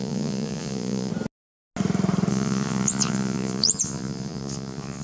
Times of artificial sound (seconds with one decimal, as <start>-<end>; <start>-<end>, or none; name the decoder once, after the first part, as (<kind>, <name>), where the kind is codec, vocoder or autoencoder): 0.0-1.1 (vocoder, Vocos); 2.3-5.0